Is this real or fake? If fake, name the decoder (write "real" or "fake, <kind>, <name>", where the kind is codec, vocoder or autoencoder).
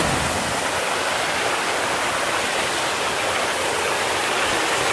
real